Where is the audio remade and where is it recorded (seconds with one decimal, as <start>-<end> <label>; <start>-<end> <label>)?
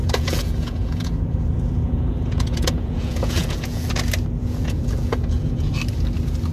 0.0-3.9 remade; 3.9-4.4 recorded; 4.4-5.7 remade; 5.7-6.5 recorded